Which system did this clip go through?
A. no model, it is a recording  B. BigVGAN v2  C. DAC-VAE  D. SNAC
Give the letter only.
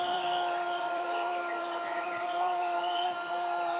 B